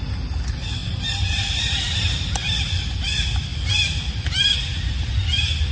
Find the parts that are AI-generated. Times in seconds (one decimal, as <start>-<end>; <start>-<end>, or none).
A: 0.8-2.1